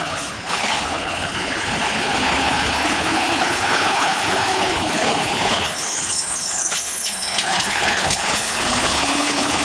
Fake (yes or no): yes